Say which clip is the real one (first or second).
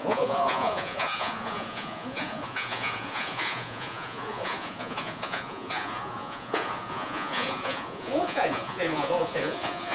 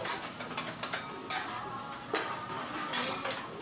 second